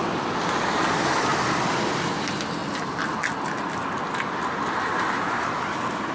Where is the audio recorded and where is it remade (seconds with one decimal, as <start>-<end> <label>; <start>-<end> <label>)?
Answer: 0.0-6.1 recorded